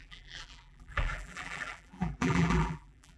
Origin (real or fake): fake